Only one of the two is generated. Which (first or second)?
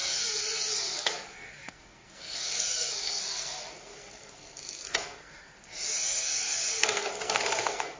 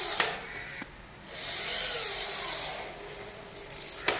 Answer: first